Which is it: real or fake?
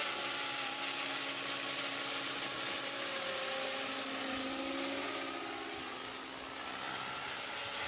real